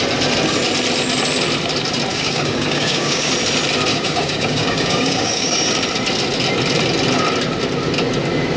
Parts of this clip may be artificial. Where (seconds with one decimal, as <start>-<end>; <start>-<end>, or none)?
2.1-3.3; 3.9-5.7